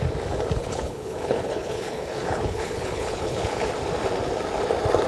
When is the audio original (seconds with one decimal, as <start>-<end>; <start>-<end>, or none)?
0.0-0.6; 3.7-5.1